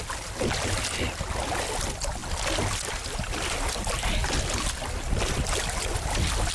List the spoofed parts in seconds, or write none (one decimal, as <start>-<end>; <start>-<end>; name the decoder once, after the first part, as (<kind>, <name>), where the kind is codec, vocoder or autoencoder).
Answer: none